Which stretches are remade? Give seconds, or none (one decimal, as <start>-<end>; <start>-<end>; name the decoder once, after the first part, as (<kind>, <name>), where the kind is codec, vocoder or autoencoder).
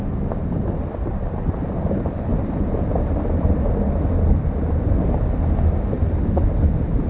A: none